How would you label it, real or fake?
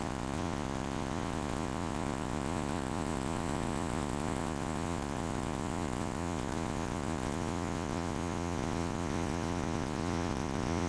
fake